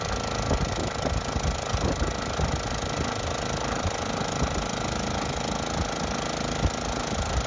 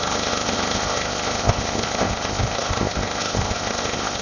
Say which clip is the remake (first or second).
second